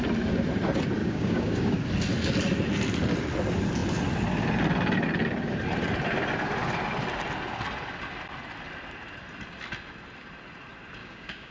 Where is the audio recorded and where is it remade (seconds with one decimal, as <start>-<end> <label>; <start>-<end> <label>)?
0.0-1.0 recorded; 1.0-1.8 remade; 1.8-11.0 recorded; 11.0-11.5 remade